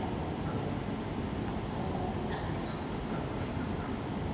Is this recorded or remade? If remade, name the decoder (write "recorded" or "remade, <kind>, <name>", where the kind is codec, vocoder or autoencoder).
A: recorded